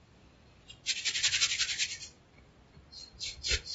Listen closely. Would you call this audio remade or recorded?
remade